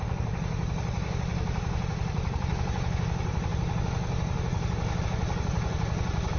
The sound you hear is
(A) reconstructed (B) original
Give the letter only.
A